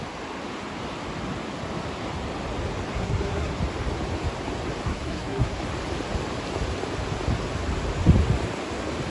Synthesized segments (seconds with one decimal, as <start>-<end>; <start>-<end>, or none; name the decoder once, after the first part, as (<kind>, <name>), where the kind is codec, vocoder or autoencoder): 2.9-3.6 (codec, SNAC); 4.9-5.6